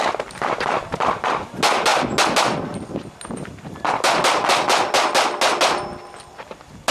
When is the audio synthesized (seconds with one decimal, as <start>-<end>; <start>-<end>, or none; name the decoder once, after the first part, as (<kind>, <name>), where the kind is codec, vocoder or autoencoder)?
none